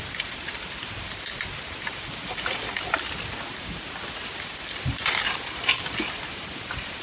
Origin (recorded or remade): remade